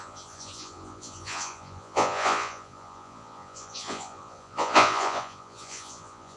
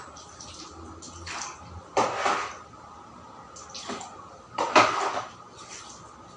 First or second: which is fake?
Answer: first